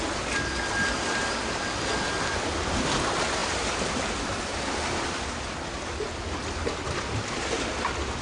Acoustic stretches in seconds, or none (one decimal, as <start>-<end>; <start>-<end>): 0.0-8.2